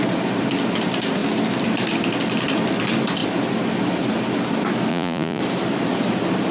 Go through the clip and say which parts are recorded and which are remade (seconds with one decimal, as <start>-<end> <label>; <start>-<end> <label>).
0.0-4.9 recorded; 4.9-5.4 remade; 5.4-6.5 recorded